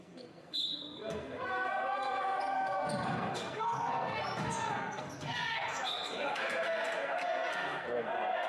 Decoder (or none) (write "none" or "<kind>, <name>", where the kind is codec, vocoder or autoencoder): codec, SNAC